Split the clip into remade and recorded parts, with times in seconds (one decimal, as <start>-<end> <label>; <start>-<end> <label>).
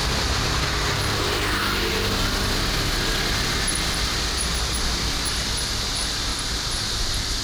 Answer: 0.0-6.3 recorded; 6.3-6.8 remade; 6.8-7.4 recorded